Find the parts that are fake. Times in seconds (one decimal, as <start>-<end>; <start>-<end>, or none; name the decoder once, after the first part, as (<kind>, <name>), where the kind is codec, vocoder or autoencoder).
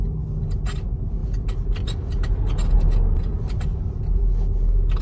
none